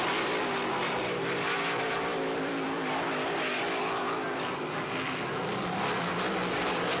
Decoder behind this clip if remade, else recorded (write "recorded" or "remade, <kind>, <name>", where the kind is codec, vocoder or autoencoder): recorded